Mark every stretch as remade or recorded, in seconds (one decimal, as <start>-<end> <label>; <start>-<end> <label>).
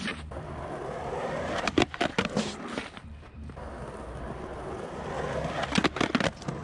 0.0-6.6 recorded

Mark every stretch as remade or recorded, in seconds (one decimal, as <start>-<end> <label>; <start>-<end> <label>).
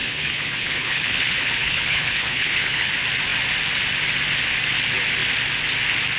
0.0-2.9 remade; 2.9-6.2 recorded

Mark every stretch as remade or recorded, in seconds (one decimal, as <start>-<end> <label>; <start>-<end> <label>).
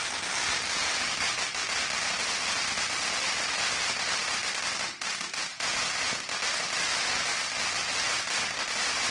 0.0-5.5 recorded; 5.5-6.2 remade; 6.2-9.1 recorded